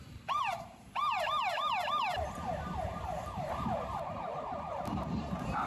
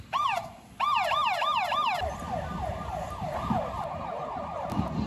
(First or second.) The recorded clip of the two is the second